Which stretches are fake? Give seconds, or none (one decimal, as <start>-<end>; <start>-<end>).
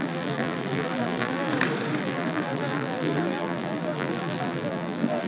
0.0-1.5; 2.0-5.3